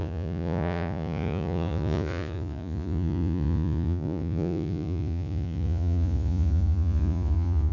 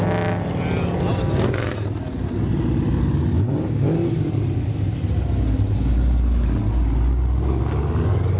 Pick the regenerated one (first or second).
first